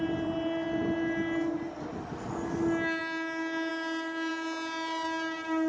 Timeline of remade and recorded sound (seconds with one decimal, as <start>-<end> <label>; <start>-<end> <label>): 0.0-5.7 recorded